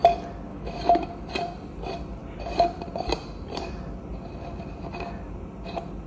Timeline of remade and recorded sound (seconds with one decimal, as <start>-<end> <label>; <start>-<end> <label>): 0.0-0.5 recorded; 0.5-1.3 remade; 1.3-6.1 recorded